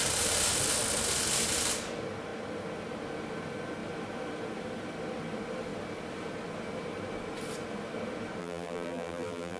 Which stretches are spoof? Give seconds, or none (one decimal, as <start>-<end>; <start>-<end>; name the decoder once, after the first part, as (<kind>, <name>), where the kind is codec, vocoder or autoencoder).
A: 8.4-9.6 (vocoder, BigVGAN v2)